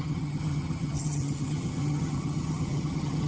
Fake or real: fake